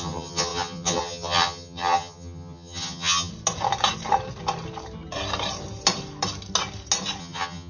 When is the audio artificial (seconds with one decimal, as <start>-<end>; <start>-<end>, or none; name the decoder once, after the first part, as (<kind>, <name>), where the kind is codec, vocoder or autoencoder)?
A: 0.0-3.3 (vocoder, HiFi-GAN); 7.2-7.7